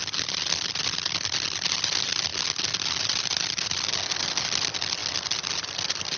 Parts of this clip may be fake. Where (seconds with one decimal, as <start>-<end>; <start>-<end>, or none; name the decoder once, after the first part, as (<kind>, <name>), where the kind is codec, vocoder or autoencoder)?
none